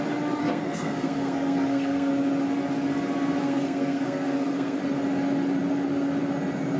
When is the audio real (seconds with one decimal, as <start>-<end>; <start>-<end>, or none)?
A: 0.0-0.4; 2.1-3.4; 4.8-6.8